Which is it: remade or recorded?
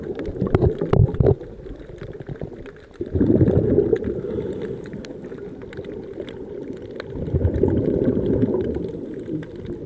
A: recorded